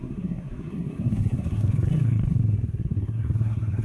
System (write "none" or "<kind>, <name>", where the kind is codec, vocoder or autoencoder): codec, SNAC